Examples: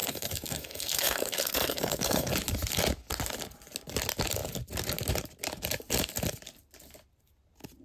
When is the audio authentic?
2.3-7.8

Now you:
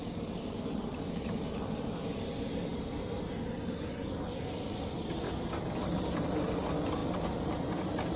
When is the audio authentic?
0.0-8.2

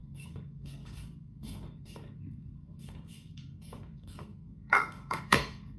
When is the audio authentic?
none

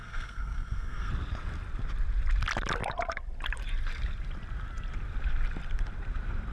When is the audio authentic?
1.1-6.5